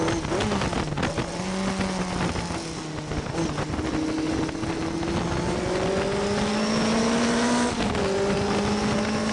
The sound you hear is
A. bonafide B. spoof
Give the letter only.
A